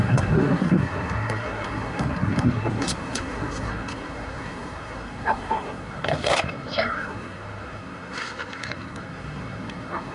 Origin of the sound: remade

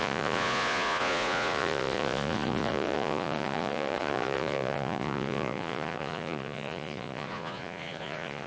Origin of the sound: remade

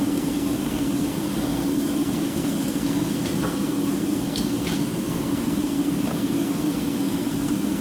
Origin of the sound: remade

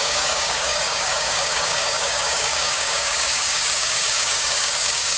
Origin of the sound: remade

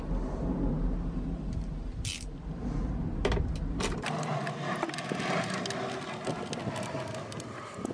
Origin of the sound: recorded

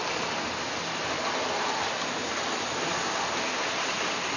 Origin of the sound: recorded